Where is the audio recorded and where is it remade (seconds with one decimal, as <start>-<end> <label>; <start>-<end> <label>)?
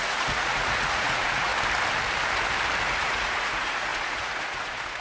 0.0-1.5 remade; 1.5-2.9 recorded; 2.9-5.0 remade